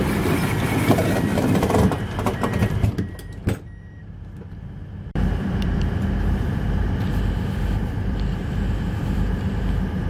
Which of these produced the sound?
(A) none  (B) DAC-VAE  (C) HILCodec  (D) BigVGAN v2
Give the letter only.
D